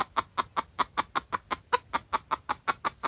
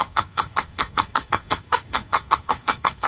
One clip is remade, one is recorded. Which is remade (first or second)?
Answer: second